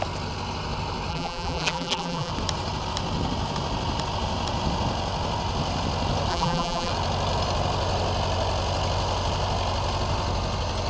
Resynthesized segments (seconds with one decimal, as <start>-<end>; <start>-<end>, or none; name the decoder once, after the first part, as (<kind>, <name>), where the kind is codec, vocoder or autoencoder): 1.1-2.3 (vocoder, BigVGAN v2); 6.3-6.9